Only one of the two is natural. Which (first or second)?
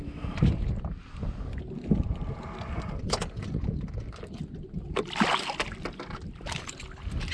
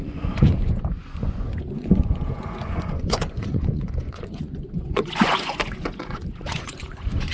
first